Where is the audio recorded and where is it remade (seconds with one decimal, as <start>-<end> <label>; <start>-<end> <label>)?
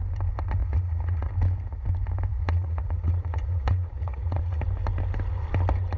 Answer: 0.0-0.6 recorded; 0.6-1.3 remade; 1.3-2.3 recorded; 2.3-4.6 remade; 4.6-6.0 recorded